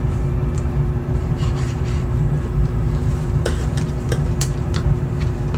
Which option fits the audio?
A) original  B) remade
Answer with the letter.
B